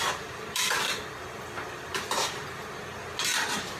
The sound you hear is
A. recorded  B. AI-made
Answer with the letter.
A